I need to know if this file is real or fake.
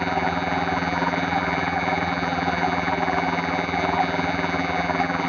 fake